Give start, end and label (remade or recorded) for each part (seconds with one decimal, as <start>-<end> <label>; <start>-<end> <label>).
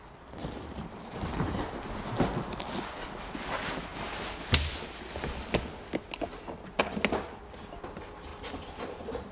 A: 0.0-0.4 recorded; 0.4-1.9 remade; 1.9-9.3 recorded